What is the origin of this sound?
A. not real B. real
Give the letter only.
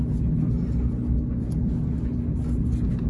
B